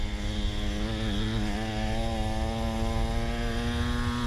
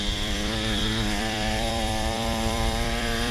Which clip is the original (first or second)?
first